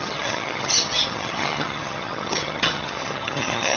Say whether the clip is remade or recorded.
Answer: remade